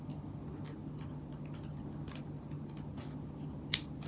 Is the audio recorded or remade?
recorded